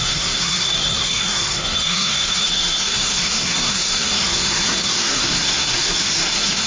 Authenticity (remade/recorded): remade